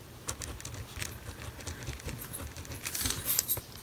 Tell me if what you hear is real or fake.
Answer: real